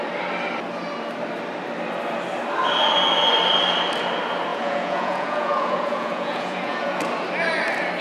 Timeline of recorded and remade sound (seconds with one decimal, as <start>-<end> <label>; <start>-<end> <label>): 0.0-4.5 recorded; 4.5-7.0 remade; 7.0-8.0 recorded

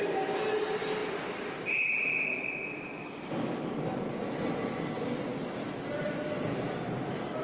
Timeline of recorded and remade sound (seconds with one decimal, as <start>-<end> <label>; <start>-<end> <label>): 0.0-7.4 recorded

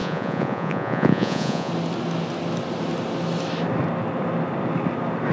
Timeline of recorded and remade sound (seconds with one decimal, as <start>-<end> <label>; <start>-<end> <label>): 0.0-1.7 remade; 1.7-5.3 recorded